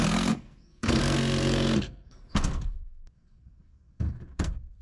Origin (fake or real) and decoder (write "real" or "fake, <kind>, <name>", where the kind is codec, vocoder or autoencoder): fake, codec, SNAC